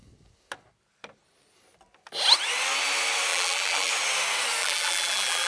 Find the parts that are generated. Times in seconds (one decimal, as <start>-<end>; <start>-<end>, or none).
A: 3.3-3.9; 4.6-5.5